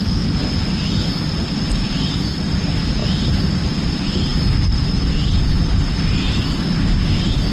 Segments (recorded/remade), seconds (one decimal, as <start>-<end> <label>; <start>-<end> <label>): 0.0-7.5 recorded